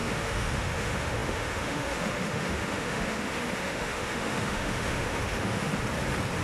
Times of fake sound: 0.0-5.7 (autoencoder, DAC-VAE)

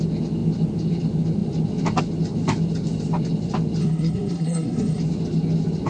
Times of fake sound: 3.8-5.0 (codec, SNAC)